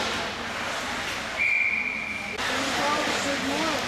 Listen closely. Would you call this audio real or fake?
real